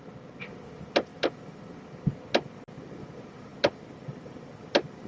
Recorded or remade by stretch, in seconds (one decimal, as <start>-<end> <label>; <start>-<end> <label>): 0.0-5.1 recorded